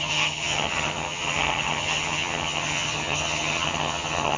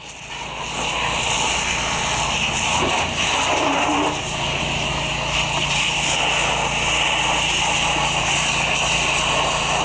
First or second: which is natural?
second